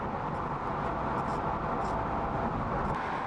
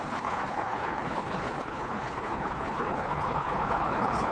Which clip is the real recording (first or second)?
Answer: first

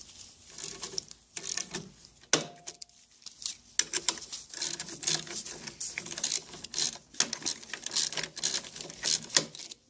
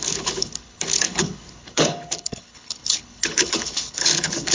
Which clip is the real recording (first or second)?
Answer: first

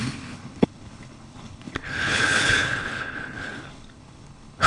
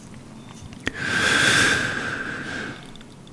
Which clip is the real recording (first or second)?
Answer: second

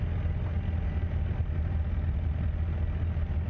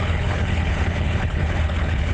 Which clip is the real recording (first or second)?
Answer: first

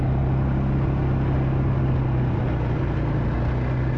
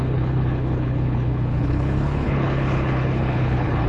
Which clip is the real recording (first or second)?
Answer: first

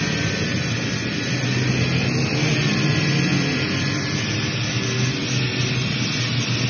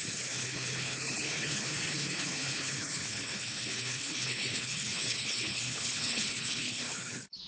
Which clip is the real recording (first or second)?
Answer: first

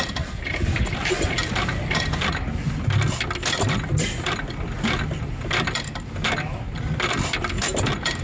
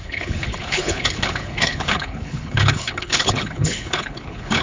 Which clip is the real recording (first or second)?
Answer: first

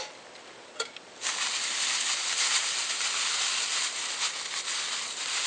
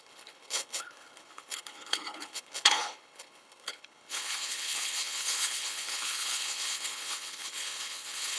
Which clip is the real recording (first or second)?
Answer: first